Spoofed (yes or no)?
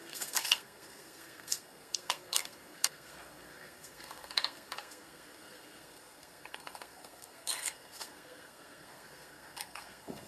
yes